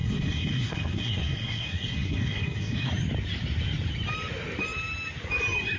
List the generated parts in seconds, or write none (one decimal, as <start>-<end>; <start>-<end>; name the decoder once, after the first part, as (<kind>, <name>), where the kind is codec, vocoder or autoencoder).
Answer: 0.0-2.9 (codec, SNAC)